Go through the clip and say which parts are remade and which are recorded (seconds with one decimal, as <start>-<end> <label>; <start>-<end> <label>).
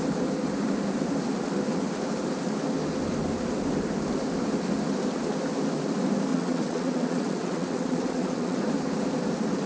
0.0-6.3 recorded; 6.3-8.6 remade; 8.6-9.7 recorded